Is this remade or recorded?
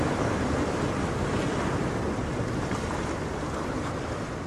recorded